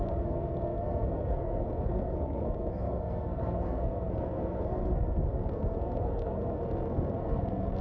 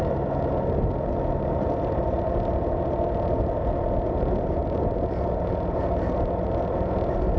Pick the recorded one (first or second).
second